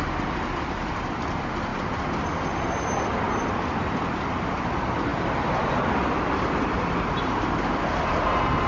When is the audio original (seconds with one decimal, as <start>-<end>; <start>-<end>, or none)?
0.0-8.7